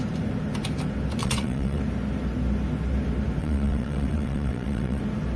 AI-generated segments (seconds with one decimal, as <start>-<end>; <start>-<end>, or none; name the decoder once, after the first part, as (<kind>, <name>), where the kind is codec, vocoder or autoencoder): 1.2-1.8 (vocoder, WaveNeXt); 3.4-5.0